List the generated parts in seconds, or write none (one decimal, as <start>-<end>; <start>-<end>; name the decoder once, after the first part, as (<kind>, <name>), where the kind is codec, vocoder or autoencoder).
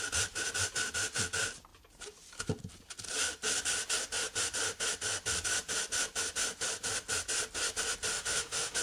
8.1-8.8 (autoencoder, DAC-VAE)